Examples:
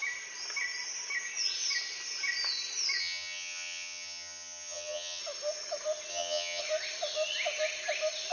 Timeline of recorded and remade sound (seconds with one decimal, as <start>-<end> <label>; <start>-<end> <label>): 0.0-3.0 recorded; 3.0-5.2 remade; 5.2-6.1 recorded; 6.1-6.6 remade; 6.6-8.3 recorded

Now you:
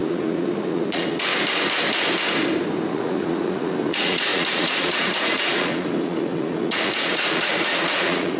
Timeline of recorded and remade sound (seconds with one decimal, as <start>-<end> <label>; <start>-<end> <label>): 0.0-1.3 remade; 1.3-2.9 recorded; 2.9-8.4 remade

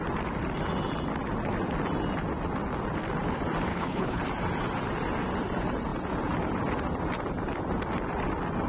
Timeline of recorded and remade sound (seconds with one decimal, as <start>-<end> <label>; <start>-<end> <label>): 0.0-3.7 recorded; 3.7-4.2 remade; 4.2-8.7 recorded

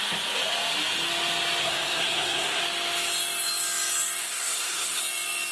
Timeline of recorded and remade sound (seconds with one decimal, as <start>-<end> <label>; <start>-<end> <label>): 0.0-1.6 recorded; 1.6-2.6 remade; 2.6-4.2 recorded; 4.2-5.0 remade; 5.0-5.5 recorded

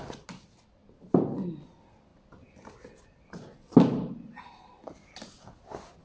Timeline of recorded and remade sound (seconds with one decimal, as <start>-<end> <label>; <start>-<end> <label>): 0.0-6.0 recorded